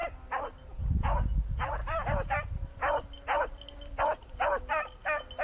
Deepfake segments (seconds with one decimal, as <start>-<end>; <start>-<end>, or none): none